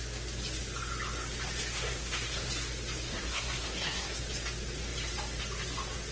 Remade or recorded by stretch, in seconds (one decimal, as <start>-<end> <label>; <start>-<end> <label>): 0.0-1.7 recorded; 1.7-2.5 remade; 2.5-3.0 recorded; 3.0-4.2 remade; 4.2-6.1 recorded